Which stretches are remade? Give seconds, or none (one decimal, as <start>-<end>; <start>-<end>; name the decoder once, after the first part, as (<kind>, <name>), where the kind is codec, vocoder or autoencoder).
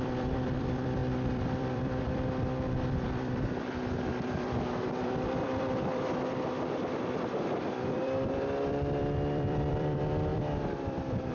0.0-11.3 (vocoder, BigVGAN v2)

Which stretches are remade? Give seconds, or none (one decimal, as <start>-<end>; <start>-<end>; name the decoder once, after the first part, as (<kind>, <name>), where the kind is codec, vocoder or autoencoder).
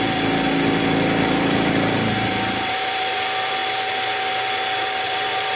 0.0-3.6 (vocoder, BigVGAN v2); 4.3-5.6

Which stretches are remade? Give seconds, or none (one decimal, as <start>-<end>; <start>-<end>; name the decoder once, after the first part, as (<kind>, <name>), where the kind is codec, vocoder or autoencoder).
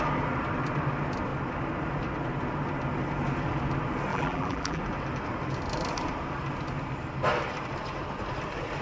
4.1-4.8 (vocoder, BigVGAN v2)